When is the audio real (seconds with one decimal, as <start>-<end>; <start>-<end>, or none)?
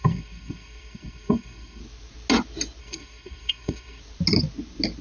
1.8-2.8; 4.0-5.0